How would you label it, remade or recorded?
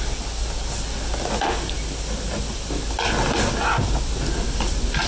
recorded